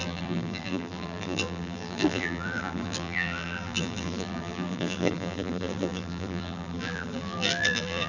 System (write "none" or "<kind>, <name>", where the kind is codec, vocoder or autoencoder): vocoder, BigVGAN v2